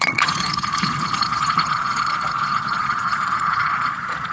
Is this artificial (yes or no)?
yes